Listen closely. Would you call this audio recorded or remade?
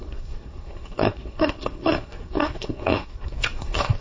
remade